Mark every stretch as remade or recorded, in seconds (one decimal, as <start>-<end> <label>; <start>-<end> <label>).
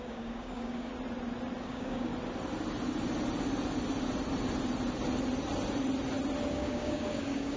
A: 0.0-0.9 remade; 0.9-1.6 recorded; 1.6-2.1 remade; 2.1-6.5 recorded; 6.5-7.6 remade